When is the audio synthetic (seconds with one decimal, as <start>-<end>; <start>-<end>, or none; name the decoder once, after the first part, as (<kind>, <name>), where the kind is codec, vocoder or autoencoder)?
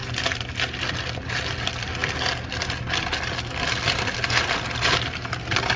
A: none